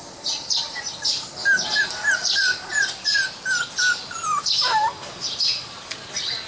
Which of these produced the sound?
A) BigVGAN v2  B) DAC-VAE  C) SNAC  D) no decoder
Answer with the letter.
D